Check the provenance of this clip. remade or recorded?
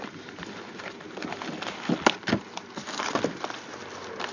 recorded